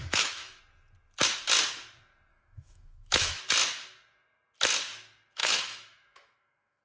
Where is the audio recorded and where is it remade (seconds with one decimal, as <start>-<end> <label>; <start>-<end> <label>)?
0.0-0.6 remade; 0.6-2.3 recorded; 2.3-3.4 remade; 3.4-5.4 recorded; 5.4-6.8 remade